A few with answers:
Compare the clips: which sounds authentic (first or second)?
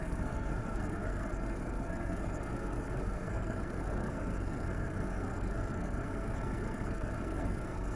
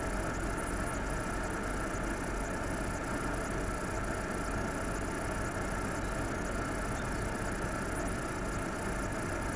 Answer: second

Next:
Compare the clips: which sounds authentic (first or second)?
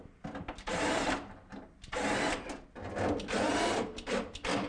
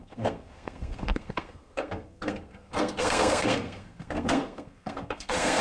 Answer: first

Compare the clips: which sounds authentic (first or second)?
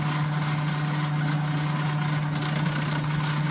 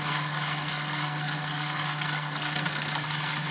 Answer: first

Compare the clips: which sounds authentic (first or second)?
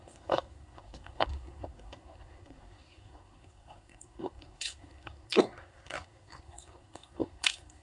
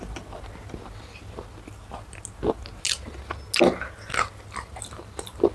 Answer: second